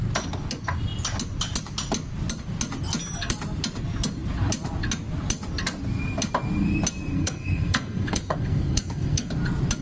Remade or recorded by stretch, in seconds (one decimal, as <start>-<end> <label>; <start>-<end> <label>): 0.0-7.1 recorded; 7.1-9.3 remade; 9.3-9.8 recorded